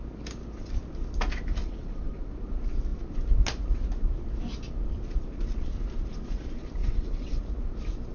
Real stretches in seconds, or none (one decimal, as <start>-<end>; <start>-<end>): 0.0-1.6; 2.3-6.8; 7.4-8.1